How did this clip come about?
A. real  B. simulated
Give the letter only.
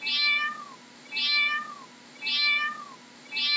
A